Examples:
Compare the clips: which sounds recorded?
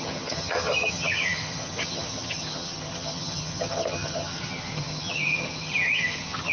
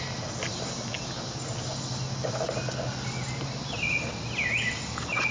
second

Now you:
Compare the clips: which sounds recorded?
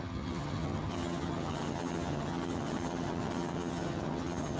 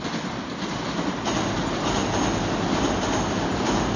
second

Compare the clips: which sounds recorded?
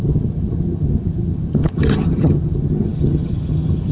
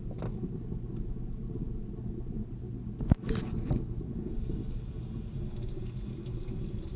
second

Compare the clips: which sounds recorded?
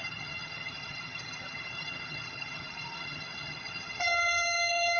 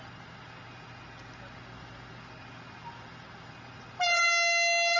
second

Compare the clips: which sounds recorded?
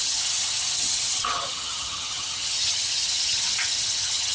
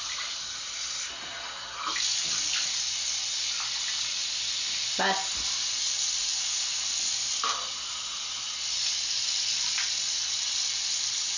second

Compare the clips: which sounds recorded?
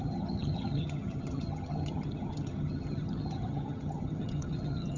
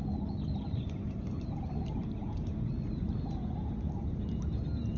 second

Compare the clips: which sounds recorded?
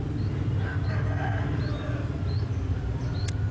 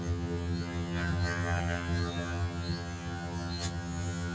first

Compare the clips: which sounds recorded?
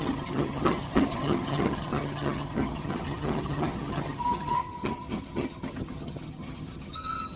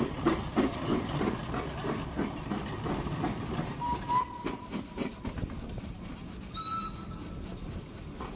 second